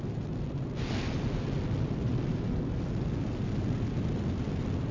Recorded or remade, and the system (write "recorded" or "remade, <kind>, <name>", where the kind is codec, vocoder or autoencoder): recorded